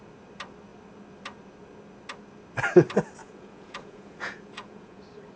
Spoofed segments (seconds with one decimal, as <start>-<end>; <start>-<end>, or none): 3.2-5.0